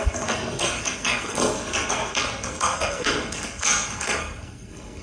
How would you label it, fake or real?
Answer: fake